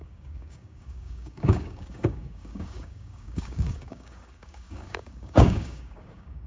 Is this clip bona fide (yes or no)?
no